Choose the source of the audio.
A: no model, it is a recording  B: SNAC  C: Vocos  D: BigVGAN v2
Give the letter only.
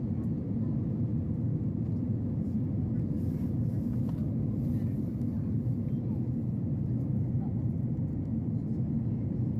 A